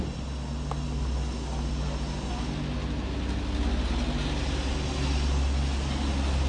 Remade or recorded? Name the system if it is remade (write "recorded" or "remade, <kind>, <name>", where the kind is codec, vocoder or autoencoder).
recorded